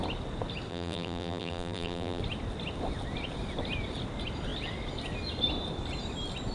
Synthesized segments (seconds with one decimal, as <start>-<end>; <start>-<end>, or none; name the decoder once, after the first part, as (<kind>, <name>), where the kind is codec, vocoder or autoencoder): 0.7-2.2 (vocoder, BigVGAN v2)